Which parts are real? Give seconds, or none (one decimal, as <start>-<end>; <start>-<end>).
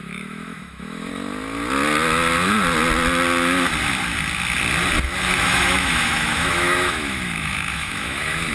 1.1-5.4